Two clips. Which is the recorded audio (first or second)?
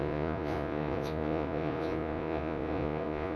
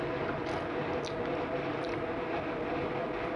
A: second